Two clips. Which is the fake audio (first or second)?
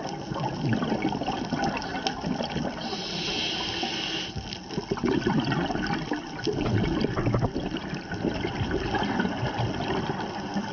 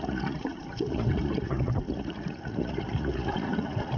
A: second